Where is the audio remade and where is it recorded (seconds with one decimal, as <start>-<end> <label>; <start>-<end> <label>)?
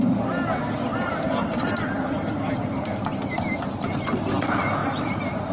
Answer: 0.0-0.9 recorded; 0.9-4.2 remade; 4.2-4.8 recorded; 4.8-5.5 remade